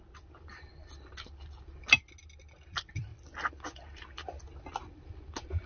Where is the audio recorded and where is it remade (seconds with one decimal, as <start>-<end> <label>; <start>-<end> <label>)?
0.0-5.7 recorded